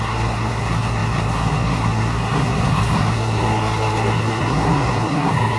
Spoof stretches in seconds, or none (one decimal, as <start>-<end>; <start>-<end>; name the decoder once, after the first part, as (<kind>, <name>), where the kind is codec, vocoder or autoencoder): 0.0-5.6 (codec, SNAC)

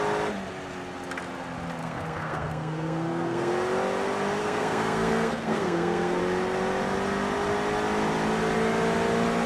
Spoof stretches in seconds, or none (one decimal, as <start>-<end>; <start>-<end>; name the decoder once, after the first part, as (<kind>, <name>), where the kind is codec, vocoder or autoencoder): 1.8-3.5 (codec, SNAC); 4.4-6.2

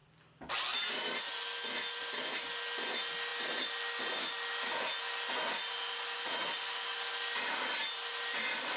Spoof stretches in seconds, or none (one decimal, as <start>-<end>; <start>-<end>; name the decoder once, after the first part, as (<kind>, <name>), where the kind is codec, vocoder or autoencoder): none

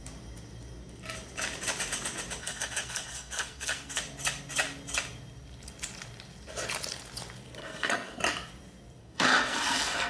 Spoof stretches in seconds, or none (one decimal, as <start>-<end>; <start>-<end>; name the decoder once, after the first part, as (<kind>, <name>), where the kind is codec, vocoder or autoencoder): 2.4-4.0 (codec, SNAC); 7.6-8.2; 9.0-10.1

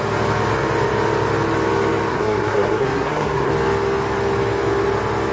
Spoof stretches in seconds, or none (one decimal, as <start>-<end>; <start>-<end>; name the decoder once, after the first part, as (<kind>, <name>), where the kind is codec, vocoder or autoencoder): 2.1-3.5 (codec, SNAC)

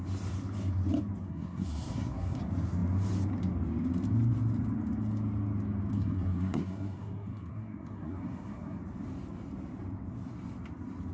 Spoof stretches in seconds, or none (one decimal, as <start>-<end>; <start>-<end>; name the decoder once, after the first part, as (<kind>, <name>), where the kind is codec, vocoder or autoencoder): 1.2-2.4 (codec, SNAC); 5.9-8.8